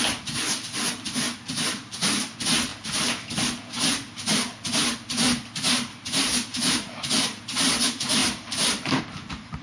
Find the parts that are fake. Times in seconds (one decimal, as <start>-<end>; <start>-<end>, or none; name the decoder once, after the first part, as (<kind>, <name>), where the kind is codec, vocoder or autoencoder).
6.5-7.1 (vocoder, BigVGAN v2); 8.2-9.0